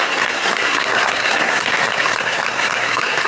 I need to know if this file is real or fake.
fake